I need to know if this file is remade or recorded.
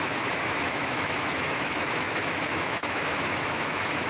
remade